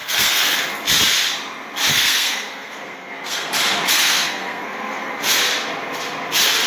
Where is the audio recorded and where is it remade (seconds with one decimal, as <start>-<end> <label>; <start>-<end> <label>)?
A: 0.0-0.6 remade; 0.6-1.9 recorded; 1.9-3.5 remade; 3.5-3.9 recorded; 3.9-5.1 remade; 5.1-6.7 recorded